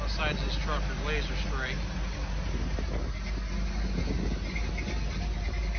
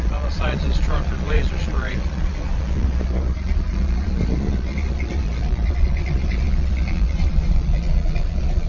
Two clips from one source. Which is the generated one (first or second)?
second